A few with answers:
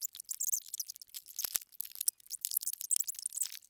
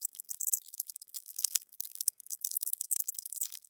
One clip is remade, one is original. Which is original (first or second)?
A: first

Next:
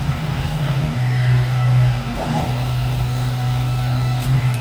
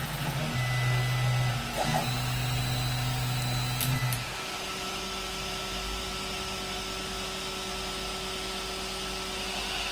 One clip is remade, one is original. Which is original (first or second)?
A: second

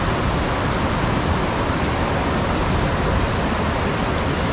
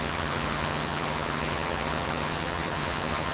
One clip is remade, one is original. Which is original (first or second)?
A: first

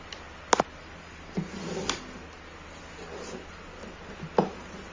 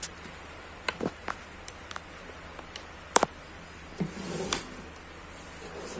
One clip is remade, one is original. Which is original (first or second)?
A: first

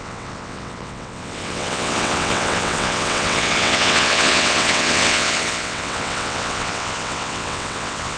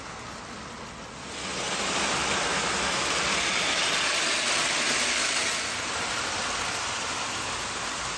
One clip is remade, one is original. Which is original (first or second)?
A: second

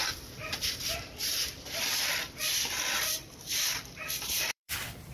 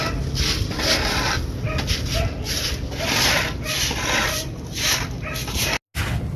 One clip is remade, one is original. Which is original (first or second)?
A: second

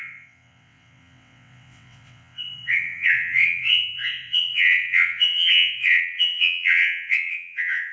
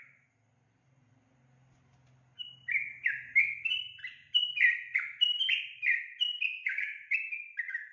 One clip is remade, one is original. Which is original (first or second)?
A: second